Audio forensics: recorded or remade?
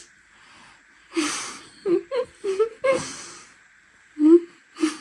recorded